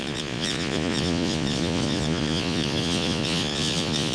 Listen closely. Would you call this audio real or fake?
fake